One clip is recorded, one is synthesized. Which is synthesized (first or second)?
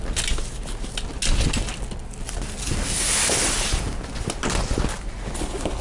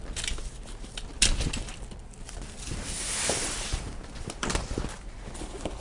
second